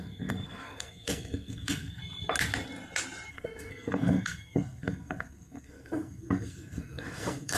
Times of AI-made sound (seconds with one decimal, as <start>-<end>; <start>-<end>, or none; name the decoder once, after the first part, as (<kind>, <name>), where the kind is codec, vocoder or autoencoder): 0.0-2.0 (codec, SNAC); 3.3-7.6